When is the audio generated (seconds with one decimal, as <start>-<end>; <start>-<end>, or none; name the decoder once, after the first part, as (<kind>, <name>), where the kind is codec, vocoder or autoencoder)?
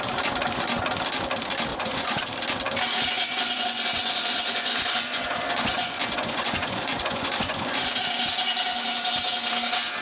1.7-2.2 (vocoder, Vocos); 3.1-7.9